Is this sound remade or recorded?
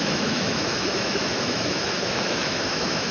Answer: remade